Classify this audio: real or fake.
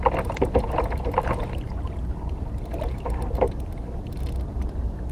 real